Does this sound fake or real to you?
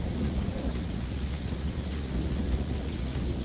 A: fake